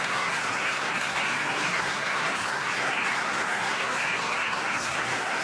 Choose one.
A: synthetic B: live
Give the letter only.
A